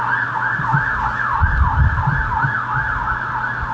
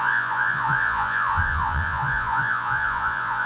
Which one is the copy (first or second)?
second